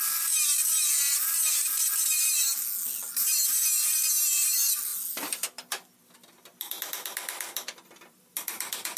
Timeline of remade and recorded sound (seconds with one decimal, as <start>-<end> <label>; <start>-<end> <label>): 0.0-9.0 recorded